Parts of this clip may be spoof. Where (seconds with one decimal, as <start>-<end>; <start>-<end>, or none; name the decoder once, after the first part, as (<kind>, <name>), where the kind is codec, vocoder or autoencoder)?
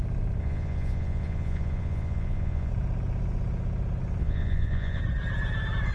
0.4-2.7 (vocoder, Vocos); 4.2-5.0